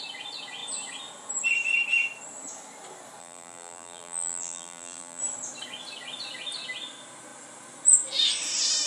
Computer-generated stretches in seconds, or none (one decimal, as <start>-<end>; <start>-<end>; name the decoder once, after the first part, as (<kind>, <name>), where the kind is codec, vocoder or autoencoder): 3.2-5.2 (vocoder, BigVGAN v2)